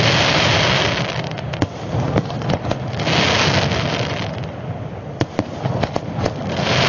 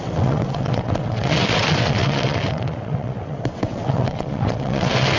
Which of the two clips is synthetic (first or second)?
second